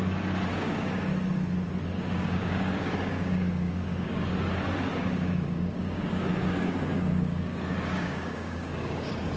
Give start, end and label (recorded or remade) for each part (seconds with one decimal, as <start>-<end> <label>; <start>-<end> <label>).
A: 0.0-0.5 recorded; 0.5-1.1 remade; 1.1-2.1 recorded; 2.1-4.3 remade; 4.3-5.0 recorded; 5.0-9.4 remade